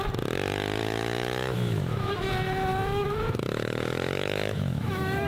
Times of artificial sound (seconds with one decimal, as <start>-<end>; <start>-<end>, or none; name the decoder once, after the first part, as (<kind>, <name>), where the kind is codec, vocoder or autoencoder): 0.8-2.3 (autoencoder, DAC-VAE); 2.7-5.3